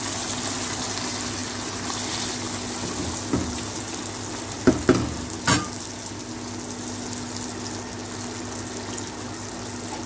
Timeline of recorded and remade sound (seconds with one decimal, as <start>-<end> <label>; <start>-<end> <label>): 0.0-10.1 recorded